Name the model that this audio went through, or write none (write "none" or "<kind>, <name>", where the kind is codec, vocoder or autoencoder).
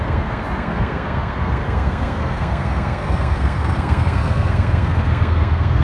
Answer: codec, SNAC